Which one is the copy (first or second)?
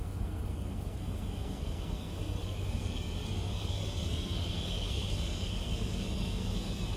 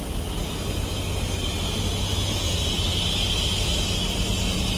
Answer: first